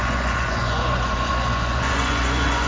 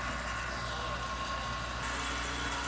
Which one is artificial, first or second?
first